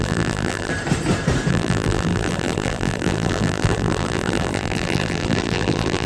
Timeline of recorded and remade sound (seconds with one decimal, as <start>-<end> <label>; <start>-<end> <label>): 0.0-0.7 remade; 0.7-1.5 recorded; 1.5-6.1 remade